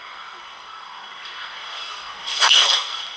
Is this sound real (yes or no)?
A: no